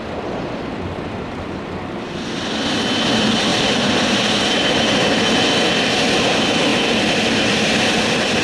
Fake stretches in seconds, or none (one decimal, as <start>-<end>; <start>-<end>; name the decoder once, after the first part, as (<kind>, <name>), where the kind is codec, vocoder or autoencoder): 3.5-5.2 (vocoder, BigVGAN v2); 6.7-8.4